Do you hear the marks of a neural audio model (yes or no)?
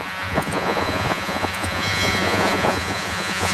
yes